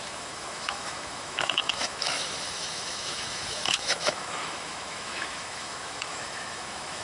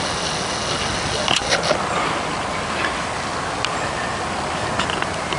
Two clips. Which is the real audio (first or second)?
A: second